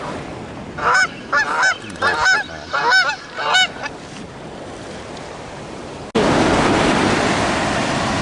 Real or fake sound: real